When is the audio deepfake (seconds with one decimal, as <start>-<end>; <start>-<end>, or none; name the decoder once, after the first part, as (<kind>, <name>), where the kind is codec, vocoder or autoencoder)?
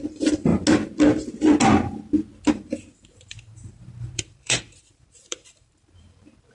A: 0.0-0.5 (vocoder, BigVGAN v2); 2.5-6.5